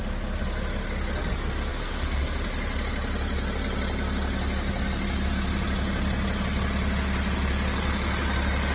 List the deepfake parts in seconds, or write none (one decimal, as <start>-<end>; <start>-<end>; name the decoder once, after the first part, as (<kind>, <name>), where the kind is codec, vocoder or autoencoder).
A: 1.7-2.2 (codec, SNAC)